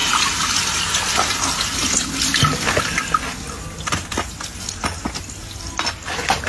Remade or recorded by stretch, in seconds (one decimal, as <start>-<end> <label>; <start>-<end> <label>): 0.0-6.5 recorded